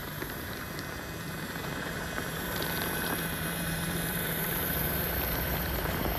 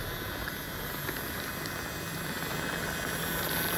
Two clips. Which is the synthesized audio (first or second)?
first